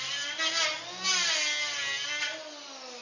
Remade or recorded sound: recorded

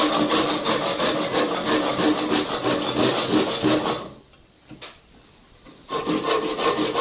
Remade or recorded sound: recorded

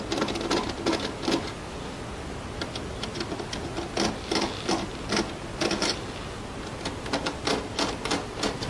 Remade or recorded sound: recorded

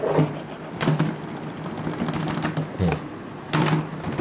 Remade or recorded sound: recorded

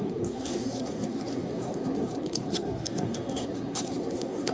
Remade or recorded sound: remade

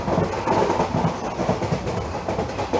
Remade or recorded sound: recorded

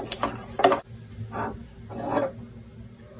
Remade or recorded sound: recorded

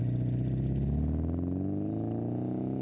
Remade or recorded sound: recorded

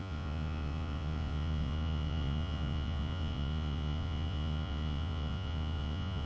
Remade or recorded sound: remade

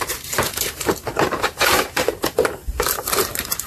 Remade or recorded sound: remade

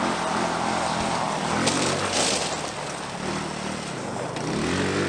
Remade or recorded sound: recorded